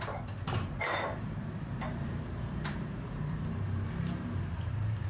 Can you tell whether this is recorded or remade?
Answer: remade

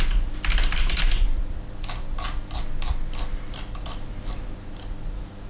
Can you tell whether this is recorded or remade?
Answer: remade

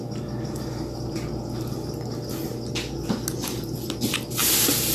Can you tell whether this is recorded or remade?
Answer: recorded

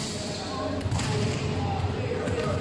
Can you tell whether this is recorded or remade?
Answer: recorded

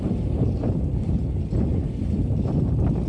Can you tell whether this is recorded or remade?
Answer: recorded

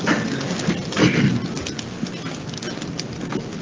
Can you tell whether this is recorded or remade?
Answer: recorded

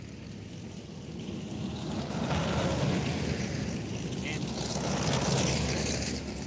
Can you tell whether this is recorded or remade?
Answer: recorded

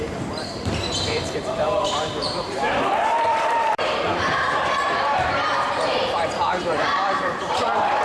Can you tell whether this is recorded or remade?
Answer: remade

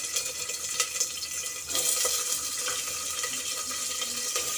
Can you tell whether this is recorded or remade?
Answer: recorded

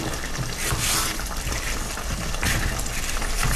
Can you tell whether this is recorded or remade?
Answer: recorded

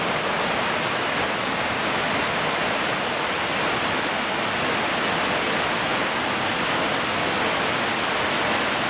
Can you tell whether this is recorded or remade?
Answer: recorded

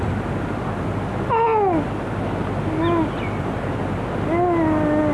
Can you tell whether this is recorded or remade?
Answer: recorded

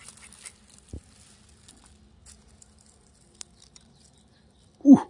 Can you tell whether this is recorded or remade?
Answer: recorded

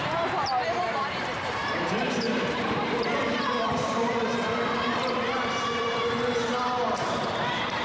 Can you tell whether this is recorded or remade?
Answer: remade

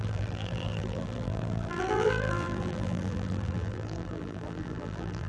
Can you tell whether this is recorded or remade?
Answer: remade